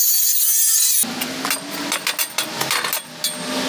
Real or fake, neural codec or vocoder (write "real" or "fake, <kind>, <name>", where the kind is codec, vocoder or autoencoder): real